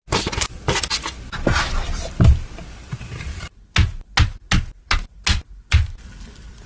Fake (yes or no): no